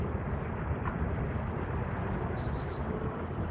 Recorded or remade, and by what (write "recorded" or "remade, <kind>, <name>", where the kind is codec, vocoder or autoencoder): recorded